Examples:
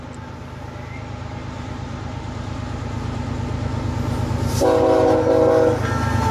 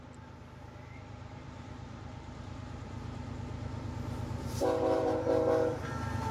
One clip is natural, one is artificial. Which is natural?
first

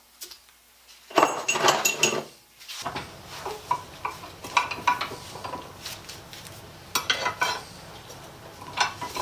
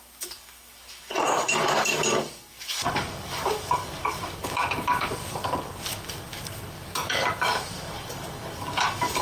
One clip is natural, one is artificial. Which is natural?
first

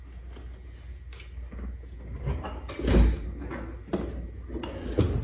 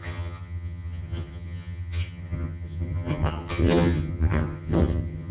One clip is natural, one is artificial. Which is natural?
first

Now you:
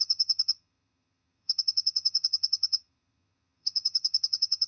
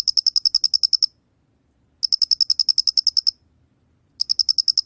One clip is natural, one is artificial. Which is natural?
second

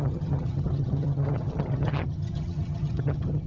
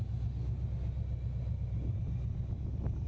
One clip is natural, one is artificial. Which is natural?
second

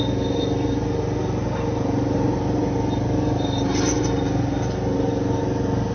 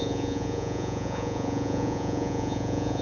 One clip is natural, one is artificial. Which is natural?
first